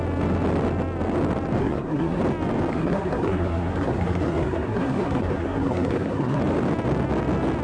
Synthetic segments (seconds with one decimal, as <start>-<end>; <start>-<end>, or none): 1.6-2.2; 2.7-6.4